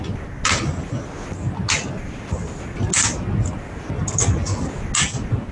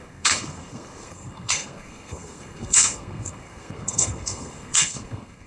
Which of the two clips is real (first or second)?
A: first